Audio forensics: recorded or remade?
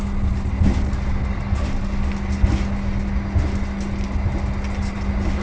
recorded